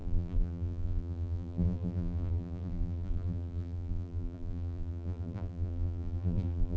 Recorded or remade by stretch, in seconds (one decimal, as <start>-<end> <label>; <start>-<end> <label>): 0.0-6.8 remade